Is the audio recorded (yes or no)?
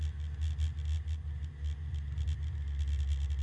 yes